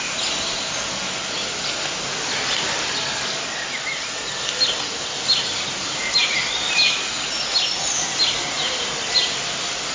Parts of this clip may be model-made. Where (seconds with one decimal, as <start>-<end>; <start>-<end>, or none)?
none

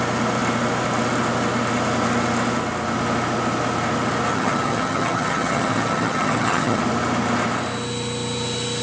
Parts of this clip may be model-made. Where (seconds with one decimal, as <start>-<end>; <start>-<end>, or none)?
4.3-6.8

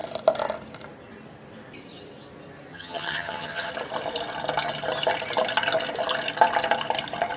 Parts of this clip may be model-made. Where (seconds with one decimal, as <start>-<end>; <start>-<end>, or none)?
2.7-3.7